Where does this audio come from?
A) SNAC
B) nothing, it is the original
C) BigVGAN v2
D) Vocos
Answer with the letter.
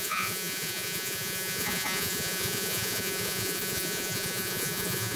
D